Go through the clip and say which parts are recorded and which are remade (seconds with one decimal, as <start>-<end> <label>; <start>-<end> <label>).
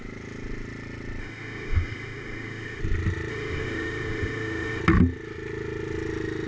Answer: 0.0-1.2 recorded; 1.2-2.8 remade; 2.8-3.3 recorded; 3.3-4.8 remade; 4.8-6.5 recorded